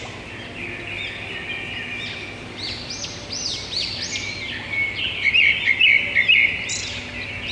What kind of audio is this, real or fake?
real